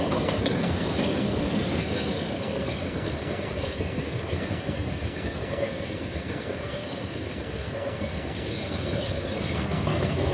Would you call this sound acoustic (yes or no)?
no